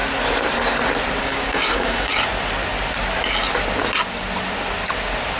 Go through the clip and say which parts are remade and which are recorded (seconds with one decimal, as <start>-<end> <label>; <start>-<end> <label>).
0.0-1.2 recorded; 1.2-2.1 remade; 2.1-5.4 recorded